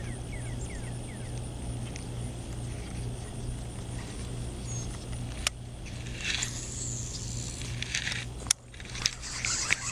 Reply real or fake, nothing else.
real